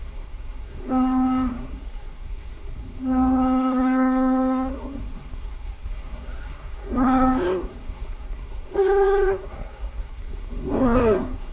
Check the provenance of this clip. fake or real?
fake